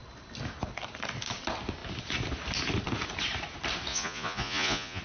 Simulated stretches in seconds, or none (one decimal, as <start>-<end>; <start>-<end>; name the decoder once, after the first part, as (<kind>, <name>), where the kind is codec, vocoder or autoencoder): 3.9-5.0 (vocoder, Vocos)